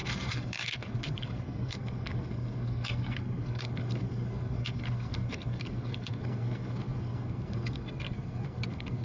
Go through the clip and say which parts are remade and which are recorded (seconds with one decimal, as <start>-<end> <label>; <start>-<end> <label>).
0.0-9.0 remade